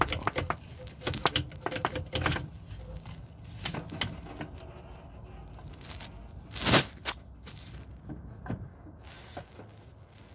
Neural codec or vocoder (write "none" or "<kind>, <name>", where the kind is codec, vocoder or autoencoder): none